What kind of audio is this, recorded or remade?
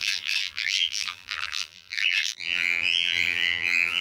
remade